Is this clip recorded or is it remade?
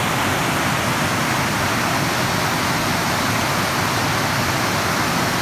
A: recorded